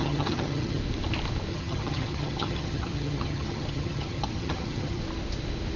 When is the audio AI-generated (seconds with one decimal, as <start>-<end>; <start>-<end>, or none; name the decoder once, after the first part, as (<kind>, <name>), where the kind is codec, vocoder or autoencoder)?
0.0-0.8 (vocoder, HiFi-GAN); 1.5-5.0